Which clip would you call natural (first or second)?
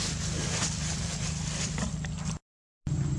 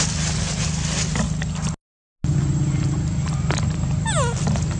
second